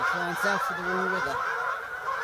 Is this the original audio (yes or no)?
yes